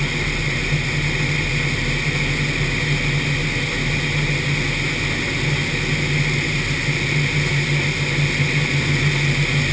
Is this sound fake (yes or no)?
no